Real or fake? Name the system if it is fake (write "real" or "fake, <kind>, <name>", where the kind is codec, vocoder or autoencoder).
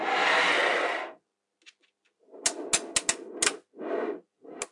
real